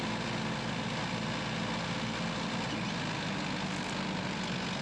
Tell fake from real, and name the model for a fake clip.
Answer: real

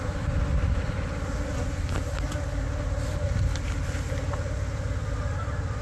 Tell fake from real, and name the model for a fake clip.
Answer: real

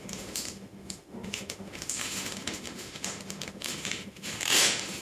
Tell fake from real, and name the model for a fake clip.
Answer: fake, autoencoder, DAC-VAE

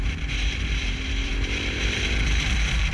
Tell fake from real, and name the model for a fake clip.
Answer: fake, vocoder, BigVGAN v2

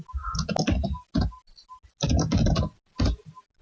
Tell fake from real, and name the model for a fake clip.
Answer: real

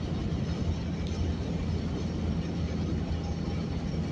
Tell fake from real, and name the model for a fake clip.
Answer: real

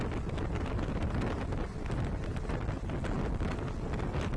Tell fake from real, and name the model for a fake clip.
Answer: real